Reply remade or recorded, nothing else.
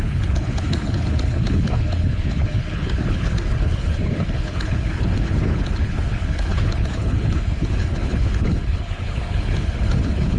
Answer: remade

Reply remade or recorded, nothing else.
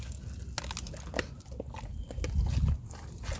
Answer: recorded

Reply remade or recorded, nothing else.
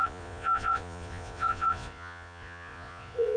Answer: remade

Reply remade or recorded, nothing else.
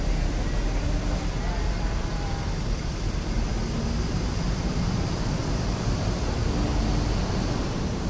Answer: recorded